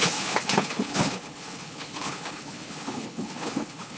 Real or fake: fake